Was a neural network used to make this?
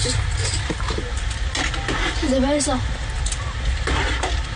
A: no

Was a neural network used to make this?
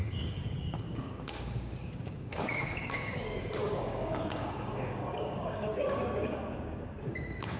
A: yes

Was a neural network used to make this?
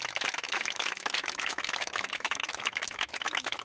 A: yes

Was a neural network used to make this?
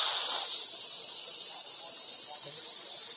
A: no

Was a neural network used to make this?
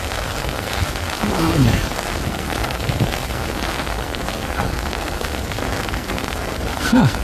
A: yes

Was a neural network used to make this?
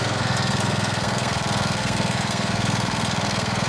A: yes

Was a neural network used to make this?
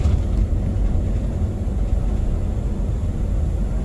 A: no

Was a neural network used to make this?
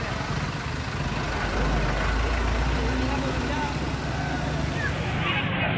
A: no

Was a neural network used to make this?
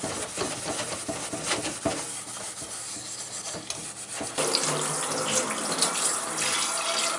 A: no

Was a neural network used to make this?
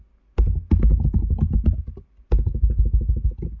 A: no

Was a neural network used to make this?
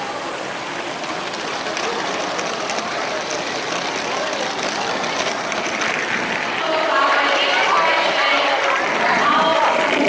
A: yes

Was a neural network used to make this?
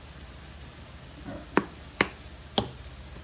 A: no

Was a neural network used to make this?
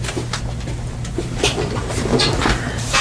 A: yes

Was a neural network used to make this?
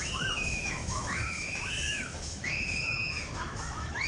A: yes